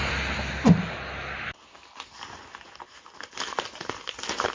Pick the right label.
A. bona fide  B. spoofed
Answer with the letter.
A